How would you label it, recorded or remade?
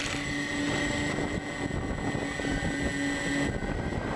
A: recorded